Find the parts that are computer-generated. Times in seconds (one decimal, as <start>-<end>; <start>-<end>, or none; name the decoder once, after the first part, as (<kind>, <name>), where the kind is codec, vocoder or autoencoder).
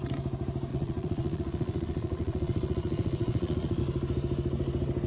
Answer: 0.7-3.8 (vocoder, Vocos)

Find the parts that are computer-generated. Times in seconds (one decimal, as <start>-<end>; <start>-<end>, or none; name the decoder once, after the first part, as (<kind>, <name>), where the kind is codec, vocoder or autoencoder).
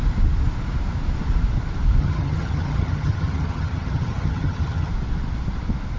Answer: 2.0-4.9 (vocoder, HiFi-GAN)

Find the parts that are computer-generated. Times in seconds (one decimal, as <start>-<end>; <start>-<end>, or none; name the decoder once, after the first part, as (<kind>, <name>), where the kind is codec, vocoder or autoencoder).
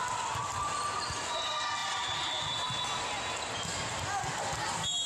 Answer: none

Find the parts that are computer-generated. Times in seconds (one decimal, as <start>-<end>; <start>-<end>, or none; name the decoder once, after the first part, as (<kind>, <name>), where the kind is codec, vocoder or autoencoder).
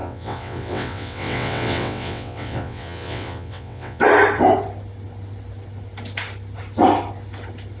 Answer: 0.0-4.0 (vocoder, WaveNeXt)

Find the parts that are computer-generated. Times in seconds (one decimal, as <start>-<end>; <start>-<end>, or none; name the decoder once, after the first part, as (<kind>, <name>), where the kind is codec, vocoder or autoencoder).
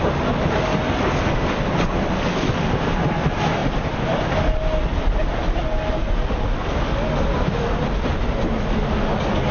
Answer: none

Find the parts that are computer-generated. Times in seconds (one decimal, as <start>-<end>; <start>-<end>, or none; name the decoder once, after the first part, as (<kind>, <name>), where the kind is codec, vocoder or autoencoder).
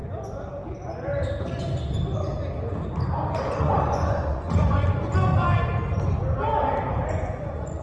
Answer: 3.6-5.3 (vocoder, Vocos); 7.1-7.8